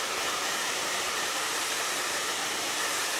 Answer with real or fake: real